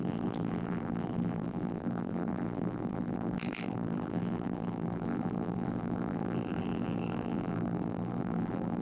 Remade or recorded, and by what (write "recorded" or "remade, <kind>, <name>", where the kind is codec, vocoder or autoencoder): remade, vocoder, BigVGAN v2